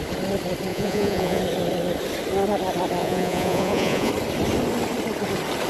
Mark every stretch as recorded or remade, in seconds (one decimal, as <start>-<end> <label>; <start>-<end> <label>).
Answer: 0.0-0.7 recorded; 0.7-1.4 remade; 1.4-3.0 recorded; 3.0-4.1 remade; 4.1-5.7 recorded